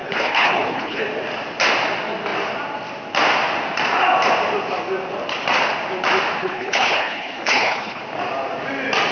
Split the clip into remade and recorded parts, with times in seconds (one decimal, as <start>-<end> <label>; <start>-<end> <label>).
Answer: 0.0-1.0 remade; 1.0-6.4 recorded; 6.4-8.0 remade; 8.0-9.1 recorded